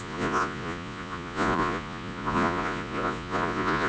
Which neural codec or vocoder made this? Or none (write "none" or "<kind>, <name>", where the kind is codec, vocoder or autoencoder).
vocoder, Vocos